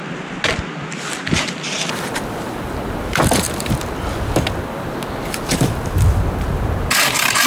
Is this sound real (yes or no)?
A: yes